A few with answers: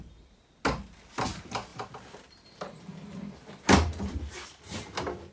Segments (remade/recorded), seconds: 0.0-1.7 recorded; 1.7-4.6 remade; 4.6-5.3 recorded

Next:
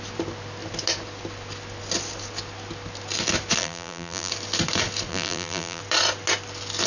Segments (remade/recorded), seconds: 0.0-3.6 recorded; 3.6-4.3 remade; 4.3-5.1 recorded; 5.1-5.8 remade; 5.8-6.9 recorded

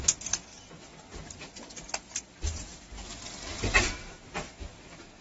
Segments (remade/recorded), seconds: 0.0-5.2 recorded

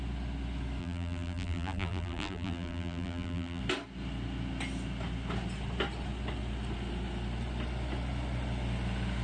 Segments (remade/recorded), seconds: 0.0-0.8 recorded; 0.8-3.6 remade; 3.6-9.2 recorded

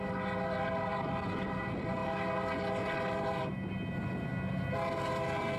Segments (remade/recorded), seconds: 0.0-5.6 recorded

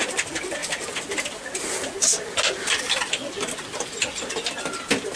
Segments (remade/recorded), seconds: 0.0-5.2 recorded

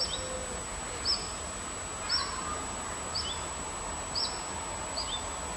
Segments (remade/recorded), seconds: 0.0-5.6 recorded